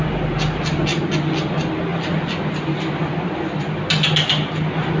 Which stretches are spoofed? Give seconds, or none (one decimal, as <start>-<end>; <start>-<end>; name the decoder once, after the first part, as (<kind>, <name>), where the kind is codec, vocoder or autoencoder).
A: none